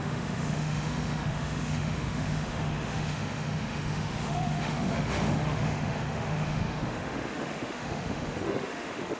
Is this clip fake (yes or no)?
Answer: yes